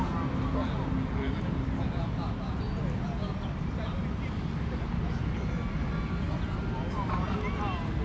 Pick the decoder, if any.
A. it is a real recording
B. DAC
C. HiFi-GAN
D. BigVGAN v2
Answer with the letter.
A